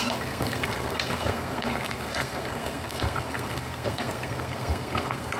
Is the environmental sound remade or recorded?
remade